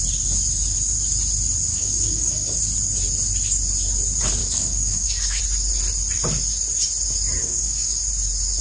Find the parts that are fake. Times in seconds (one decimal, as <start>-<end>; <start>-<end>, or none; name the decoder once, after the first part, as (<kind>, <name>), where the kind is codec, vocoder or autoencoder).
1.7-2.6 (codec, DAC); 4.4-5.4; 7.4-8.0